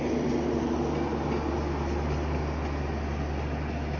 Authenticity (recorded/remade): recorded